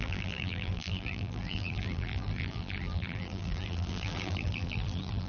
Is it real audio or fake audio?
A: fake